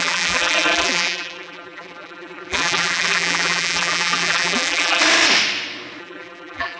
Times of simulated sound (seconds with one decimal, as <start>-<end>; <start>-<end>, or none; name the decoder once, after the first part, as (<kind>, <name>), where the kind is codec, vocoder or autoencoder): 0.0-5.0 (vocoder, BigVGAN v2); 6.0-6.8